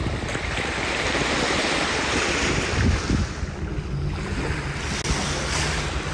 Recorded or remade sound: recorded